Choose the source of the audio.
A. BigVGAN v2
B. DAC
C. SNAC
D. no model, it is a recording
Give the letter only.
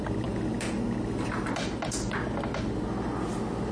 D